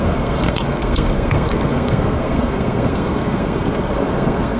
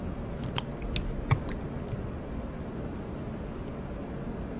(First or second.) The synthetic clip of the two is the first